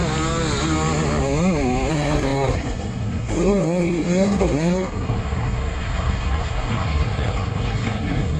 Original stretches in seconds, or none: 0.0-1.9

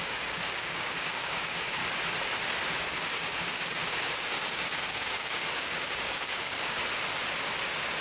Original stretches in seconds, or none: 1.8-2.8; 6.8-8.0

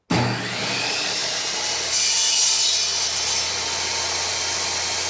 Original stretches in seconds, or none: 0.0-5.1

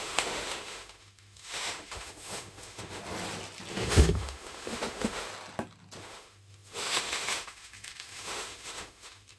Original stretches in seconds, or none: 3.0-3.7; 5.3-6.0

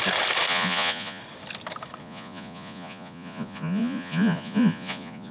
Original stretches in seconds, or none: 0.0-0.5; 1.2-2.0

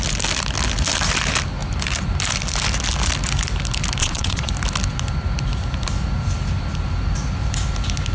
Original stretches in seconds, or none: 0.0-4.0; 4.5-8.1

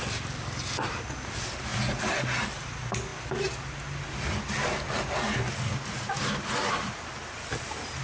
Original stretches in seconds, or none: 0.0-8.0

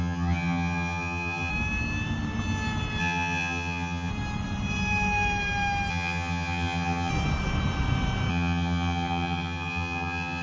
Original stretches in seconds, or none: 1.5-3.0; 4.1-5.9; 7.1-8.3